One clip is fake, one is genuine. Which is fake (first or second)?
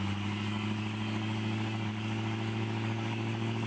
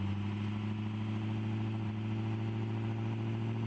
first